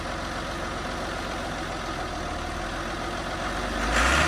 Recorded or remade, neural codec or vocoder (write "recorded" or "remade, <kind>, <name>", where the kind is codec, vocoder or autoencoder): recorded